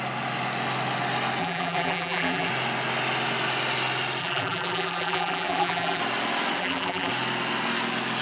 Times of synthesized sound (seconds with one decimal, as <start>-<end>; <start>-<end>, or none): 1.4-2.5; 4.2-6.0; 6.6-7.1